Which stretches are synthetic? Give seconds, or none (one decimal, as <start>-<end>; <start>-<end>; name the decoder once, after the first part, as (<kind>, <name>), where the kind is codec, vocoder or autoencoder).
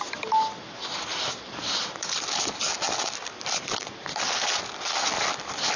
1.1-4.6 (vocoder, BigVGAN v2)